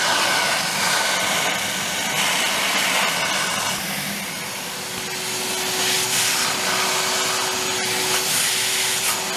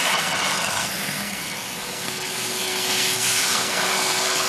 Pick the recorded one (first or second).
first